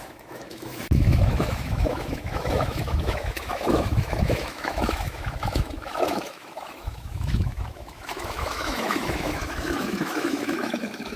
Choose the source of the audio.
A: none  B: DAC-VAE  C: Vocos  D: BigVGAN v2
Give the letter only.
B